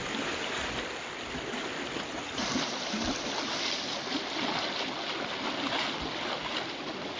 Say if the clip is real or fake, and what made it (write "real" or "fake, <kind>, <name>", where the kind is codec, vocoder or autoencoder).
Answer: real